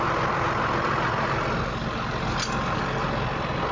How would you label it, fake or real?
real